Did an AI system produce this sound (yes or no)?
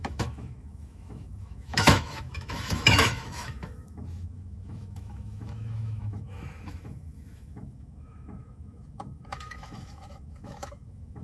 yes